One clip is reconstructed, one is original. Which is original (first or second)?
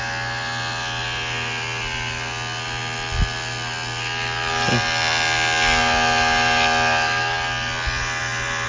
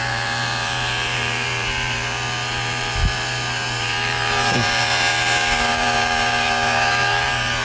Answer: first